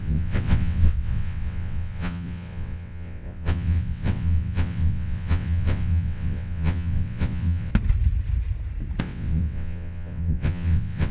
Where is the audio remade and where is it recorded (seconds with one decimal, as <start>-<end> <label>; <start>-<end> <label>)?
0.0-7.7 remade; 7.7-9.0 recorded; 9.0-11.1 remade